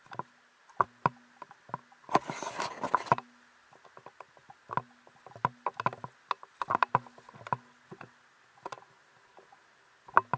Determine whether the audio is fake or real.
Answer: real